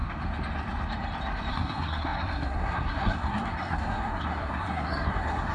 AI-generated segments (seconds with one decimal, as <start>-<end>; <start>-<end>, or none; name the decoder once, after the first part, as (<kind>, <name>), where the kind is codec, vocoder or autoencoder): 1.5-5.5 (codec, SNAC)